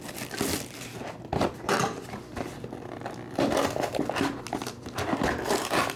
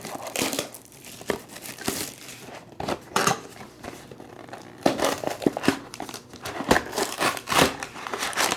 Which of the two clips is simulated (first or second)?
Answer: second